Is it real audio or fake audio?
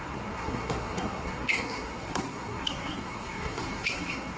fake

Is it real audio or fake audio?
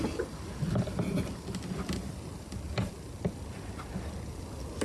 real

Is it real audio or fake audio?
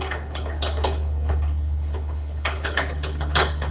fake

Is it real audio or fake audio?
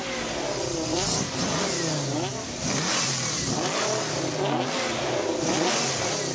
real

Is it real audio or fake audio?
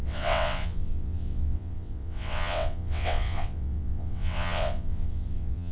fake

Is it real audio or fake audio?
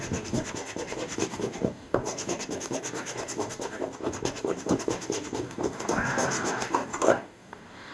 fake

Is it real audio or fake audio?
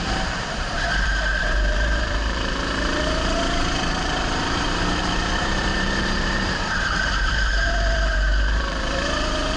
fake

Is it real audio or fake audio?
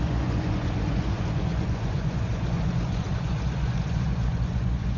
fake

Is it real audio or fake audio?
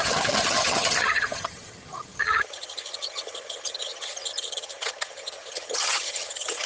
fake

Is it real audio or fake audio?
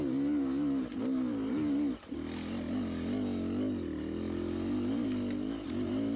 real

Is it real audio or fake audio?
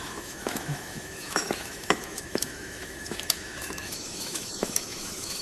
fake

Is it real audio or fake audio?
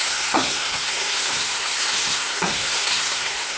fake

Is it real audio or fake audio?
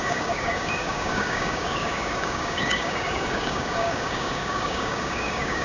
fake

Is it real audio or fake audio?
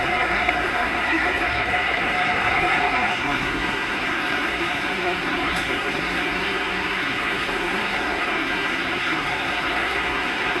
fake